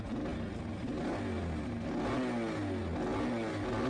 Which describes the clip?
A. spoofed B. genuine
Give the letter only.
B